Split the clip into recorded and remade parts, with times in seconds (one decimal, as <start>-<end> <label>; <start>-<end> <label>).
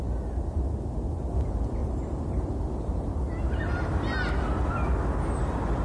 0.0-1.8 recorded; 1.8-2.5 remade; 2.5-5.8 recorded